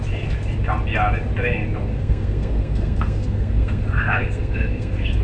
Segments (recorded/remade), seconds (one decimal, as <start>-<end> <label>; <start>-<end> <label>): 0.0-1.9 recorded; 1.9-5.2 remade